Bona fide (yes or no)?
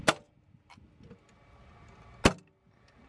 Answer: yes